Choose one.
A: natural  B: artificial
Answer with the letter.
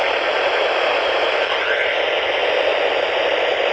A